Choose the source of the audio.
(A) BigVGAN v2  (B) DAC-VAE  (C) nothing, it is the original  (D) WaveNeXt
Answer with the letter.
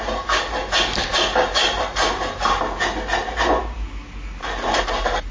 C